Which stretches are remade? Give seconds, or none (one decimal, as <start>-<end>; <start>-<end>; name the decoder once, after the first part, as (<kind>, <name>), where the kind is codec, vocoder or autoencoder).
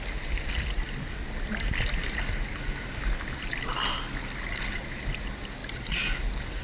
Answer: none